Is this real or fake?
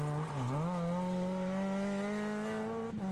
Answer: real